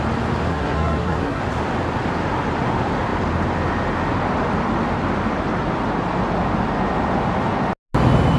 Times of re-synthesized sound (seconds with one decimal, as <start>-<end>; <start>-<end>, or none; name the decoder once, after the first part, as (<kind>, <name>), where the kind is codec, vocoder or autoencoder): 0.5-1.4 (codec, SNAC)